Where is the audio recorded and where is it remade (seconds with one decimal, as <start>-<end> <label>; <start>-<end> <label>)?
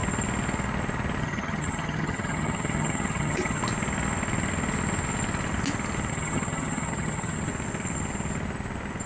0.0-1.2 recorded; 1.2-3.6 remade; 3.6-6.1 recorded; 6.1-7.5 remade; 7.5-9.1 recorded